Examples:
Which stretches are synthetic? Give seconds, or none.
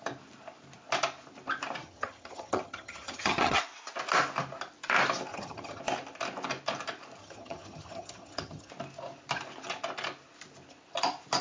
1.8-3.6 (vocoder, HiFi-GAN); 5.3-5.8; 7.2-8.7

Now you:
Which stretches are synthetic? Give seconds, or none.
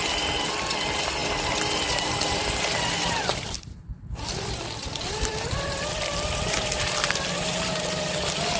3.3-5.8 (vocoder, BigVGAN v2)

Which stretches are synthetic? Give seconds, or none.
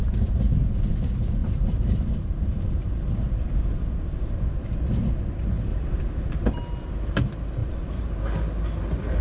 1.4-3.0 (vocoder, BigVGAN v2); 5.7-6.3; 7.6-8.2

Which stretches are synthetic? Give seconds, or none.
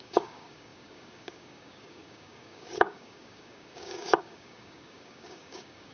0.0-5.9 (codec, DAC)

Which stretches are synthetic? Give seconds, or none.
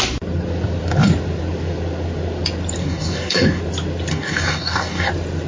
2.8-3.6 (codec, DAC); 4.1-5.1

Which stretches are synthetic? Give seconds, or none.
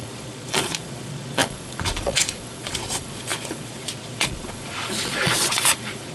0.0-6.1 (vocoder, Vocos)